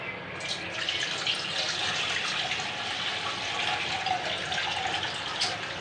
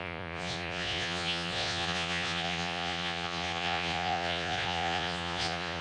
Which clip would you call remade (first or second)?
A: second